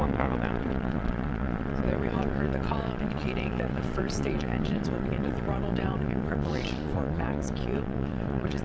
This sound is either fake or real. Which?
fake